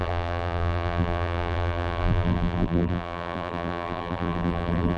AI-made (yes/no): yes